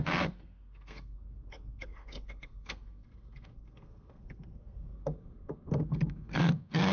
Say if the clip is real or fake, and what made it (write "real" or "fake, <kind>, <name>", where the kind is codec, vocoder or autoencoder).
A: fake, codec, SNAC